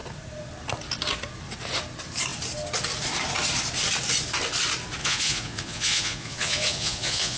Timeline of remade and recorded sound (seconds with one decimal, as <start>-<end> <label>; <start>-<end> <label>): 0.0-5.0 recorded; 5.0-7.4 remade